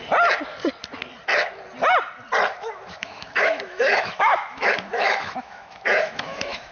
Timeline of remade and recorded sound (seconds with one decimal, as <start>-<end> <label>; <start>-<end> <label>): 0.0-2.5 recorded; 2.5-6.7 remade